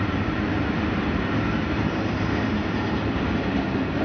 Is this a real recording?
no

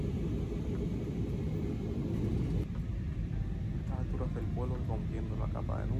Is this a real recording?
yes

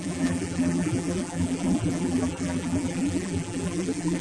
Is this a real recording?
no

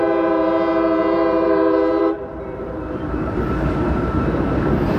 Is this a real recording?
no